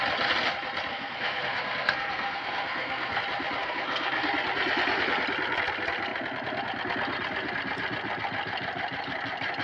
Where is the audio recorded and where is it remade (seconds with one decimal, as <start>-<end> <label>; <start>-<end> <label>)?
0.0-0.9 recorded; 0.9-3.2 remade; 3.2-3.6 recorded; 3.6-4.3 remade; 4.3-9.6 recorded